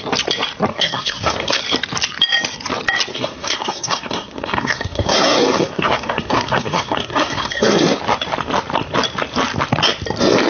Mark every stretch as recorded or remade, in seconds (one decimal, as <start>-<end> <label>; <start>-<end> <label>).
0.0-0.7 recorded; 0.7-1.6 remade; 1.6-3.1 recorded; 3.1-8.0 remade; 8.0-10.5 recorded